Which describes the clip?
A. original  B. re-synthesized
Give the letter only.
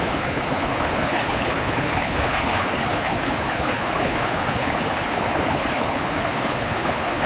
B